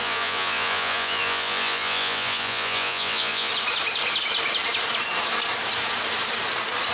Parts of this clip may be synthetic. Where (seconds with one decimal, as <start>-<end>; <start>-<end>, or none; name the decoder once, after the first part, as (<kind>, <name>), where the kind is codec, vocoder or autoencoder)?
0.0-3.5 (vocoder, Vocos)